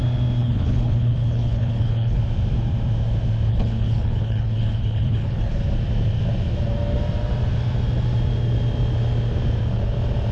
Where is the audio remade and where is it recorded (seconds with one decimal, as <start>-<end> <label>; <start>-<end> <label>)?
0.0-0.4 recorded; 0.4-2.2 remade; 2.2-3.5 recorded; 3.5-5.6 remade; 5.6-10.3 recorded